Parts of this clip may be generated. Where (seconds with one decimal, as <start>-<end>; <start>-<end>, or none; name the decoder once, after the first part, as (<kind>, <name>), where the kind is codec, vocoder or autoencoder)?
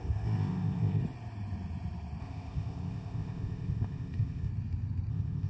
0.0-1.0 (codec, ZipCodec); 2.2-4.5; 5.1-5.5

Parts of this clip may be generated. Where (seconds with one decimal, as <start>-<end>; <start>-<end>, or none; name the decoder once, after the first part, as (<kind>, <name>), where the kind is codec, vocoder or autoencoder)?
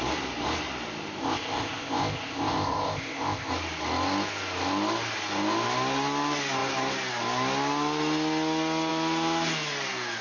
1.2-3.5 (codec, ZipCodec)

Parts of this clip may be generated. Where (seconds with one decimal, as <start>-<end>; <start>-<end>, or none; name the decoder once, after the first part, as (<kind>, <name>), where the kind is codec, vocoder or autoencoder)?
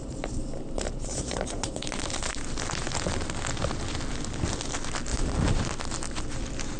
0.0-1.9 (vocoder, BigVGAN v2); 5.1-5.7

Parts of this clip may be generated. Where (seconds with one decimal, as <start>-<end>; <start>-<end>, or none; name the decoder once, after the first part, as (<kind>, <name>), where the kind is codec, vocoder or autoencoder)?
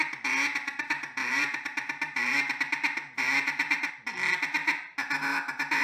1.2-3.9 (vocoder, BigVGAN v2)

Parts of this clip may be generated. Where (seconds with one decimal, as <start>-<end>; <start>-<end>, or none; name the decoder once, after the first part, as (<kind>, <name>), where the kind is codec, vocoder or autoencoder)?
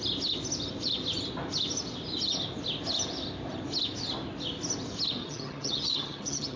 5.2-6.6 (vocoder, HiFi-GAN)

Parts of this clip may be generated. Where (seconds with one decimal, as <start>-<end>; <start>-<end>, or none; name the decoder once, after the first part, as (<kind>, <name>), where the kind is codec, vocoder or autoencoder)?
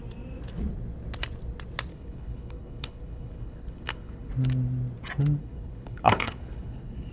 1.9-4.3 (codec, HILCodec); 5.4-7.1